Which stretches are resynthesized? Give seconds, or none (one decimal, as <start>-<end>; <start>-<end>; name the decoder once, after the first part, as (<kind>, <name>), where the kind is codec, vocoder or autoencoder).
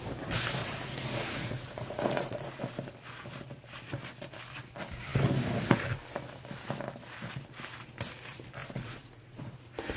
0.6-2.6 (vocoder, Vocos); 8.6-9.4